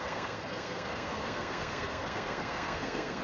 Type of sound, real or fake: fake